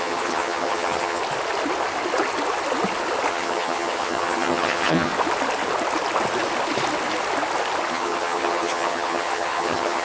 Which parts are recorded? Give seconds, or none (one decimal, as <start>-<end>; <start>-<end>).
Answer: 1.2-3.3; 5.1-7.9